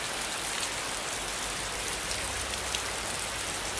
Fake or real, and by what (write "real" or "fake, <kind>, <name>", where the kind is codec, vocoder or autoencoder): real